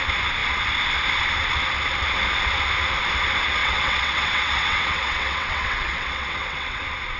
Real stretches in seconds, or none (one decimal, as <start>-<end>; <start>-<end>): 0.0-3.6; 6.8-7.2

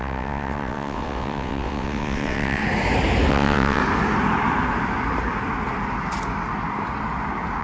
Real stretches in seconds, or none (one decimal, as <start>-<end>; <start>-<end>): 2.6-3.3; 3.8-7.6

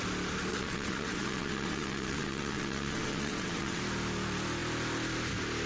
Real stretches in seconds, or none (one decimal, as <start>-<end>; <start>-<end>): 0.0-0.5; 3.8-5.7

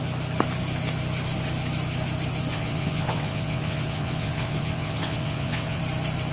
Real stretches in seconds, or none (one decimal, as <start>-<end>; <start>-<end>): 0.0-2.5; 5.8-6.3

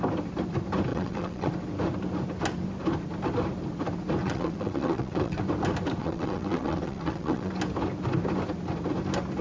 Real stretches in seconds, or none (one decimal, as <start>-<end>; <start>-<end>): 0.0-0.9; 1.5-4.2; 5.4-6.0; 7.5-9.4

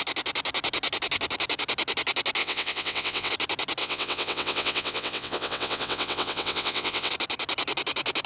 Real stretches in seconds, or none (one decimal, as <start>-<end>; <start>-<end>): 0.0-2.4; 3.3-3.8; 7.1-8.3